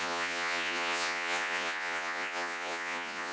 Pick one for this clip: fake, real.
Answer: fake